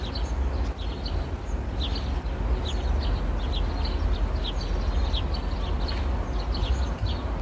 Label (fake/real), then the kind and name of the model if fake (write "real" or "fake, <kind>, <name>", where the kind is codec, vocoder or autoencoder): real